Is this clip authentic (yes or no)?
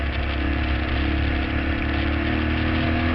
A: yes